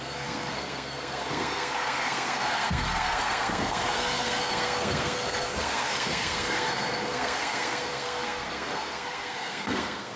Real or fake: fake